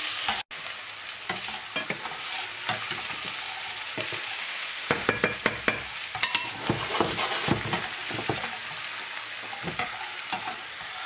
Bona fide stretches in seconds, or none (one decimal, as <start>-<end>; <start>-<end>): 0.0-4.4; 5.1-11.1